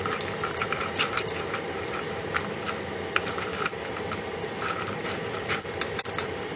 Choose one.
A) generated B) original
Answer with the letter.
B